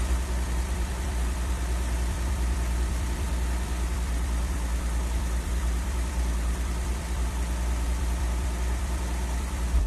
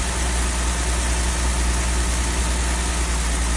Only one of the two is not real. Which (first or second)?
first